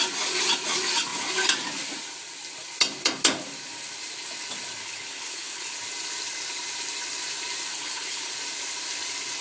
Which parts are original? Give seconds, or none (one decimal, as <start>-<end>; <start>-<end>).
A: 0.0-4.8; 5.7-7.7; 8.3-9.4